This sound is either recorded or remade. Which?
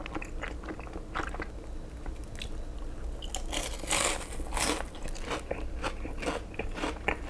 recorded